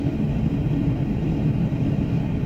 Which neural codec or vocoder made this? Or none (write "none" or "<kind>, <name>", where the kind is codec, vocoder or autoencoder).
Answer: vocoder, BigVGAN v2